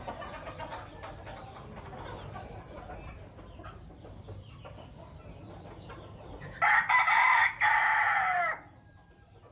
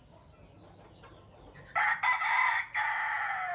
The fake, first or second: first